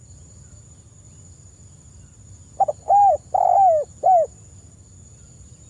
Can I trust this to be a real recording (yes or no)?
yes